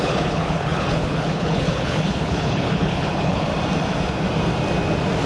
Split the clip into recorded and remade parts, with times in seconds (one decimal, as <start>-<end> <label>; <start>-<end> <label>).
0.0-3.5 remade; 3.5-5.3 recorded